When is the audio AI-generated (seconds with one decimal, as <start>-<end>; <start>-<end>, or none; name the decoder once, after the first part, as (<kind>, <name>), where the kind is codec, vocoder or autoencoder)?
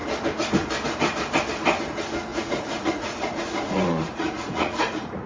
2.3-5.3 (vocoder, Vocos)